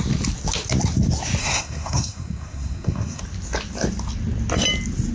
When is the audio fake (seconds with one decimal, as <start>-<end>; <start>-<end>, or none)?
1.4-3.2